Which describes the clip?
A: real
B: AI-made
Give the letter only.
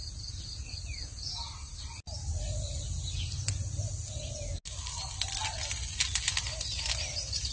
A